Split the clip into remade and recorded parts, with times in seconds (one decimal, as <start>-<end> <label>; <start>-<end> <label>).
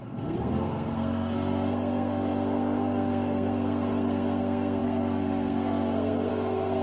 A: 0.0-6.8 remade